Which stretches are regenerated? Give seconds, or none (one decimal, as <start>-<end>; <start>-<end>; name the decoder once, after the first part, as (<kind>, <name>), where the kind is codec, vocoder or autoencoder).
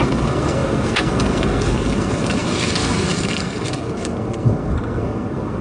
0.0-5.6 (codec, SNAC)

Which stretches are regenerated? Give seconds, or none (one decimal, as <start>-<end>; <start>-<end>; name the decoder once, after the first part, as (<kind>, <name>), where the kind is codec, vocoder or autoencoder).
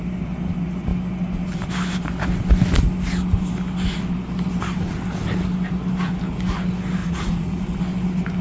7.0-7.8 (vocoder, Vocos)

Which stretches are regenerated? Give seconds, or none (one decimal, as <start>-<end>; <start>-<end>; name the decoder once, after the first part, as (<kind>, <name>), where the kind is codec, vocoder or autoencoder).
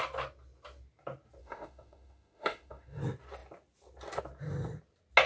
1.4-3.0 (autoencoder, DAC-VAE)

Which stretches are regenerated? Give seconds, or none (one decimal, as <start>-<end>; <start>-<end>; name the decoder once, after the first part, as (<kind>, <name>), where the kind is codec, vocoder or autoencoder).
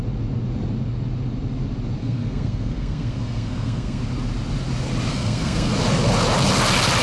2.0-4.0 (codec, SNAC); 5.1-5.7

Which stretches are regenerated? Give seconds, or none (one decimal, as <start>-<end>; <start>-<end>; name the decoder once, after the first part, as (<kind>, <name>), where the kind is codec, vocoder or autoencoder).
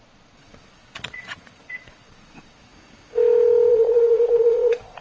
0.0-2.7 (vocoder, Vocos); 3.7-5.0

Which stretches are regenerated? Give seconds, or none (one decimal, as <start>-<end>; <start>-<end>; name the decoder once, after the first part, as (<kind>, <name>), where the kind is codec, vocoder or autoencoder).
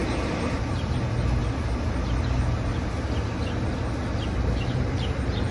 0.7-1.4 (vocoder, BigVGAN v2); 2.2-2.7; 4.7-5.5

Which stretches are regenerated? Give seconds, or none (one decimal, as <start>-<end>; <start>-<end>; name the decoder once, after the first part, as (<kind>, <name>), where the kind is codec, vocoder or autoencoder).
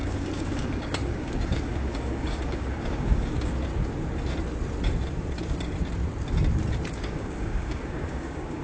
0.0-3.7 (codec, DAC); 6.9-8.6